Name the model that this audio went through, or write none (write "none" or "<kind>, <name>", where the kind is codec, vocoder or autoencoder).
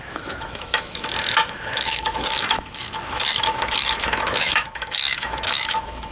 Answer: autoencoder, DAC-VAE